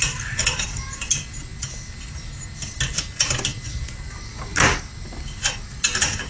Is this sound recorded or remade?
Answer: recorded